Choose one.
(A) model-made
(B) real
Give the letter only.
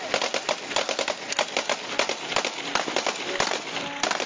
B